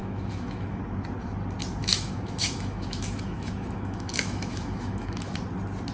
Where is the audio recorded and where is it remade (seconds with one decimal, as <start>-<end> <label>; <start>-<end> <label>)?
0.0-0.8 remade; 0.8-1.8 recorded; 1.8-5.3 remade; 5.3-5.9 recorded